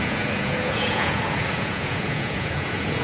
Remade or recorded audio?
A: remade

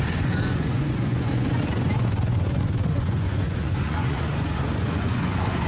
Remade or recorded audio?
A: remade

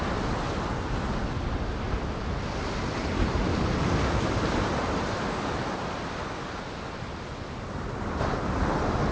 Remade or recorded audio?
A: recorded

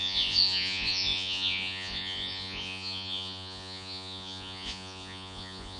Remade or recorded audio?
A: remade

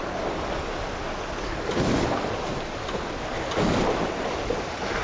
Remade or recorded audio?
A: recorded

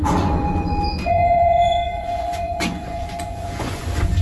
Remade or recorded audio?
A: remade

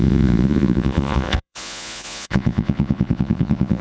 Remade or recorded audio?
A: remade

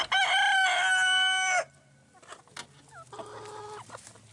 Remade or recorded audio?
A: recorded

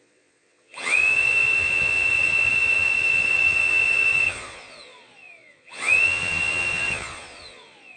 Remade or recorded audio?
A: remade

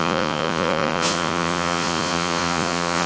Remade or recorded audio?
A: remade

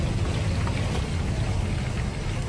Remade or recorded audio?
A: recorded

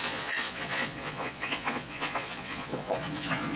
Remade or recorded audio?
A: remade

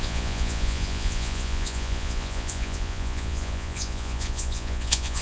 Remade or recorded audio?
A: remade